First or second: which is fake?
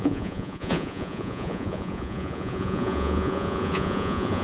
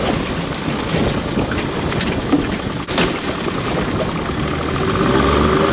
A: first